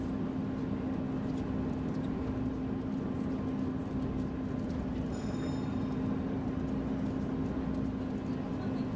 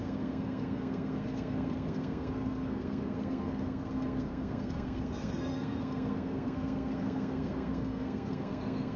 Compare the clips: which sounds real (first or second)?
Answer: first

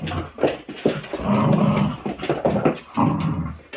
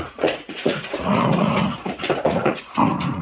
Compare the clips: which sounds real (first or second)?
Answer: first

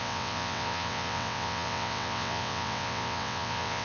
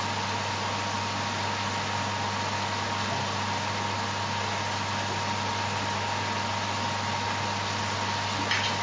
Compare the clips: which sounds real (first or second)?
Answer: second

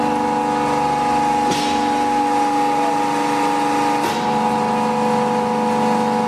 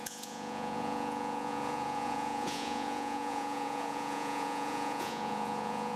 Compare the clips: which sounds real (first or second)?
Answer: first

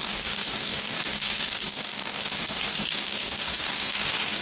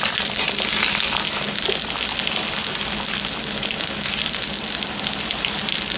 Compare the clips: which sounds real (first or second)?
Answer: second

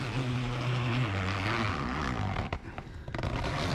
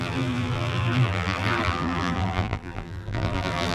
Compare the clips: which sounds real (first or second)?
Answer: first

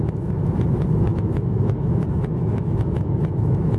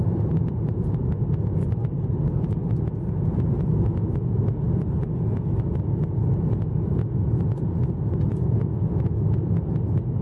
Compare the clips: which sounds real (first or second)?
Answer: second